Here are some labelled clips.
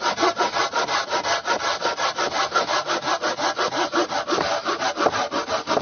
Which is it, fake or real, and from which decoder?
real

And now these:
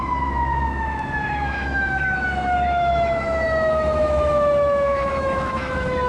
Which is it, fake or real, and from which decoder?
fake, autoencoder, DAC-VAE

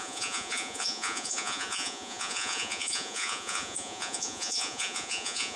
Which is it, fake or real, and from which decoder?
fake, vocoder, Vocos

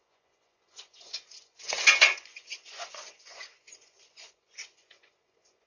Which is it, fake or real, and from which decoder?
fake, vocoder, Vocos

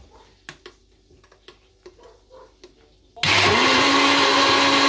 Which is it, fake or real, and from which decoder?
real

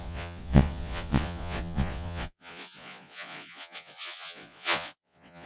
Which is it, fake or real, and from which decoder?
fake, vocoder, Vocos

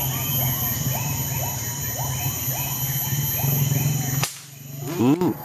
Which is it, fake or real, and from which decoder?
real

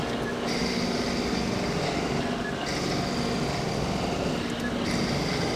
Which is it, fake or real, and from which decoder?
real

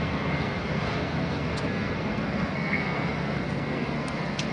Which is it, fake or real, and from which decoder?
fake, codec, SNAC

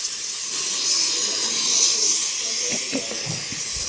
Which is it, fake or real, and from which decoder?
real